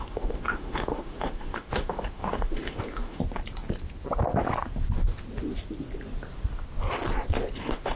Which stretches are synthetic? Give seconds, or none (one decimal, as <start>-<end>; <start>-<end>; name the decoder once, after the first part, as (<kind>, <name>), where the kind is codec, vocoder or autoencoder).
0.0-3.2 (autoencoder, DAC-VAE); 7.6-8.0